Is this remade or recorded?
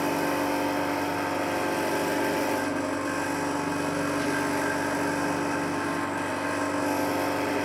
recorded